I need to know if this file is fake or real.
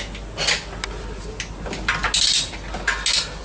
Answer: real